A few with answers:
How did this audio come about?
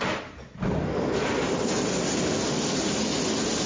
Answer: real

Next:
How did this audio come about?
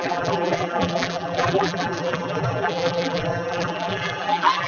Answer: fake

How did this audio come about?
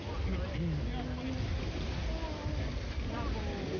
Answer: real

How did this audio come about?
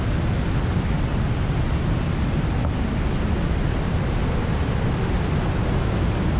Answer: real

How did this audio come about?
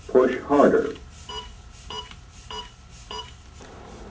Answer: fake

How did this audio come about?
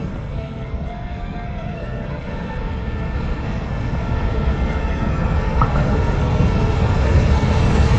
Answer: fake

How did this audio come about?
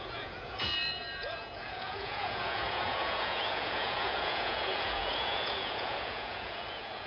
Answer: fake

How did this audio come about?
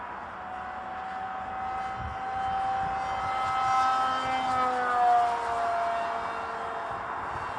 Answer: real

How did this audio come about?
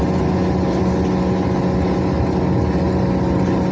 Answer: real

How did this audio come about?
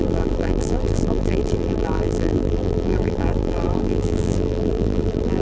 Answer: fake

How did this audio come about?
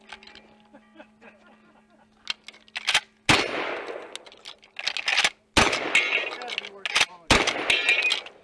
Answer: real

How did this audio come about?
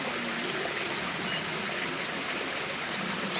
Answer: real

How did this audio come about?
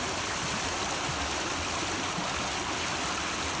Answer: real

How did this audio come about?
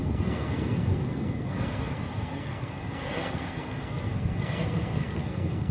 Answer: fake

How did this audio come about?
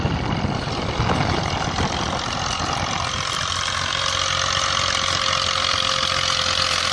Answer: real